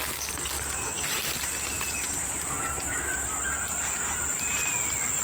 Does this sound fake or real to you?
real